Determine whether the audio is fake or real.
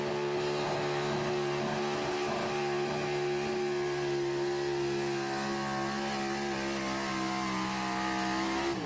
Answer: real